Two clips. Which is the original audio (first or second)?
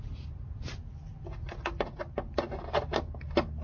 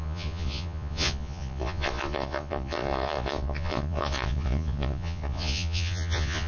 first